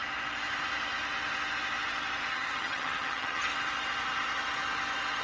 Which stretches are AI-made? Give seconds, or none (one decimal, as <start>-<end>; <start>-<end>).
2.3-3.5